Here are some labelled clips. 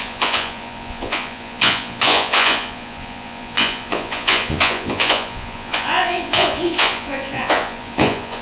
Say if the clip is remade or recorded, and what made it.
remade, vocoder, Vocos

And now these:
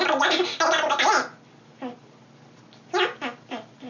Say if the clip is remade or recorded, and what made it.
recorded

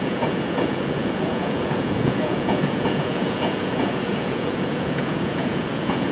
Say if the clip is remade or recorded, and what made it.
remade, vocoder, Vocos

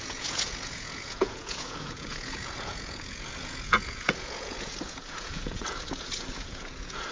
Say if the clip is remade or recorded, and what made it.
remade, vocoder, Vocos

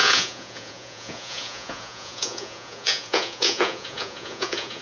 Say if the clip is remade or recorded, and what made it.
remade, vocoder, Vocos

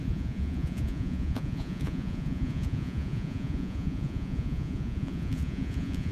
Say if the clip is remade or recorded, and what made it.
remade, vocoder, Vocos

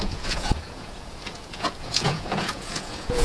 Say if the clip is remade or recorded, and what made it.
remade, vocoder, Vocos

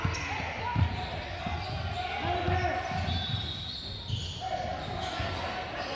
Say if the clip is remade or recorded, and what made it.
recorded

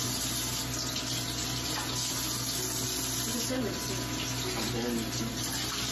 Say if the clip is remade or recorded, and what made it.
recorded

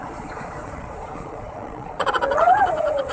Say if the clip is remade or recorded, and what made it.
remade, vocoder, Vocos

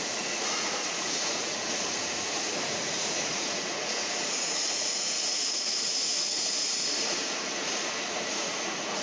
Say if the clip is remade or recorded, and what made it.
remade, vocoder, Vocos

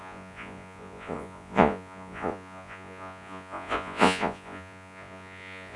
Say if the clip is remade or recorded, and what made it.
remade, vocoder, Vocos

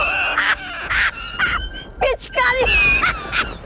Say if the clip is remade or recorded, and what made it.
recorded